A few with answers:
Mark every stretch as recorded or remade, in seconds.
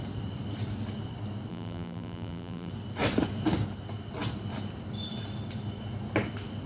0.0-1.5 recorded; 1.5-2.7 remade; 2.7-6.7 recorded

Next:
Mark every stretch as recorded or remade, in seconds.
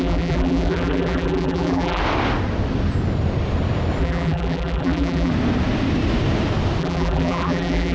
0.0-2.0 remade; 2.0-4.0 recorded; 4.0-5.3 remade; 5.3-6.8 recorded; 6.8-7.9 remade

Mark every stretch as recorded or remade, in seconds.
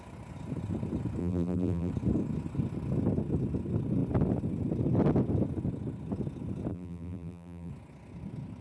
0.0-1.2 recorded; 1.2-1.9 remade; 1.9-6.7 recorded; 6.7-7.7 remade; 7.7-8.6 recorded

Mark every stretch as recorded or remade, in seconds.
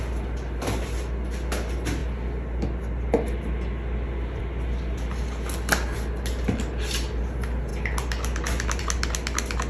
0.0-9.7 recorded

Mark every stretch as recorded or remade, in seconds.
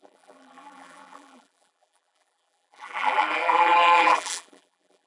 0.0-5.1 remade